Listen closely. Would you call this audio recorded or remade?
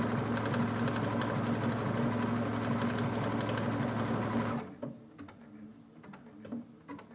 recorded